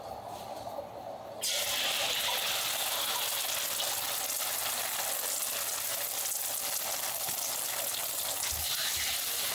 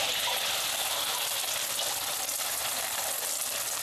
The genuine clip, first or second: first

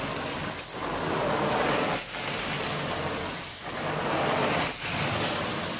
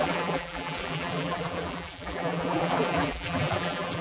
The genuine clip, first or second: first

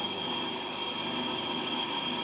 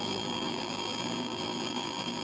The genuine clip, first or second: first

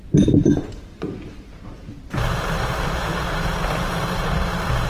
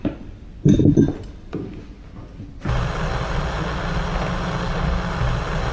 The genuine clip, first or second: second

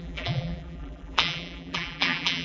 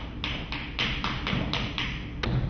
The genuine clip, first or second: second